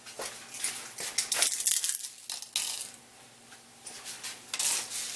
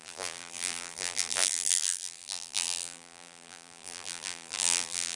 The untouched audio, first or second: first